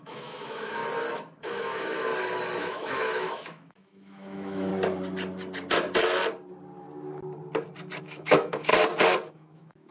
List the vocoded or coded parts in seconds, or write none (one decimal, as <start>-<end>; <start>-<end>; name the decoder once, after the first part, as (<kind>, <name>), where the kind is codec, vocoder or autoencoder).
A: 0.0-0.8 (autoencoder, DAC-VAE); 1.4-2.1; 2.6-4.7; 8.0-8.7; 9.3-9.9